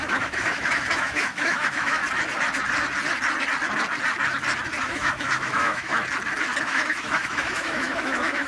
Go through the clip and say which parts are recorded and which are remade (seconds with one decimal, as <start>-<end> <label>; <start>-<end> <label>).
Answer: 0.0-2.0 remade; 2.0-4.8 recorded; 4.8-5.9 remade; 5.9-6.6 recorded; 6.6-8.5 remade